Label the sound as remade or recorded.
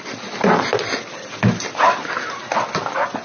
recorded